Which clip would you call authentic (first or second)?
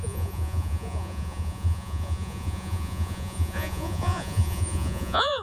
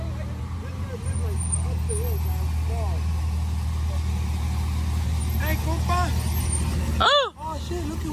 second